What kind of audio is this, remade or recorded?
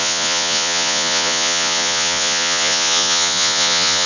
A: remade